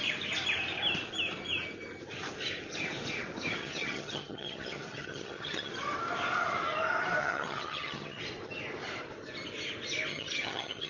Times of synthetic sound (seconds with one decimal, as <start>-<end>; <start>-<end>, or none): 3.6-5.7; 7.2-8.2; 10.1-10.9

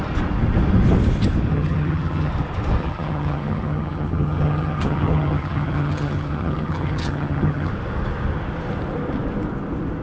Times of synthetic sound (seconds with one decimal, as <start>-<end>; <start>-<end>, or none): 1.5-2.3; 2.8-7.7

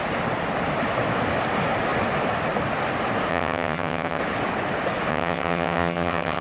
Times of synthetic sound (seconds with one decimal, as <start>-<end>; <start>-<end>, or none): 3.3-4.2; 5.1-6.4

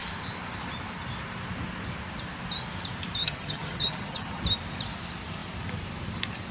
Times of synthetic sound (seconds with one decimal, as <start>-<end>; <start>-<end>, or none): 3.2-4.4

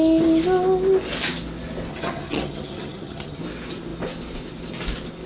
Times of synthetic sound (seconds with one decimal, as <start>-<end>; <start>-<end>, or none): 1.9-3.4

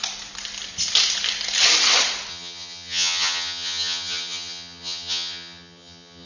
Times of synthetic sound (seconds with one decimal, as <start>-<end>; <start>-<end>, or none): 2.3-6.3